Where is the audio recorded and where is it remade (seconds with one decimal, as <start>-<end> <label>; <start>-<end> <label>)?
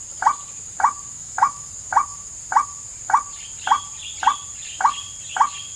0.0-1.1 recorded; 1.1-1.7 remade; 1.7-5.8 recorded